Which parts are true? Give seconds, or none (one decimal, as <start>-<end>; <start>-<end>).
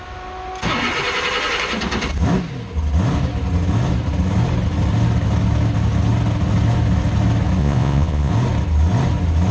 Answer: 0.0-7.6; 8.3-9.5